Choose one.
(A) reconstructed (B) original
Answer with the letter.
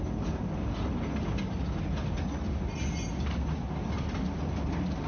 B